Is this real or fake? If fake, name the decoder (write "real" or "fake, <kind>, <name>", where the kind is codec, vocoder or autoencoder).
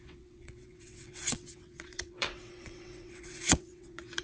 fake, vocoder, WaveNeXt